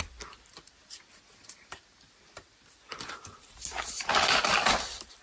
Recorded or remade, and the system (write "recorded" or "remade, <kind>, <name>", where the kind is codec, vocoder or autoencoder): remade, vocoder, BigVGAN v2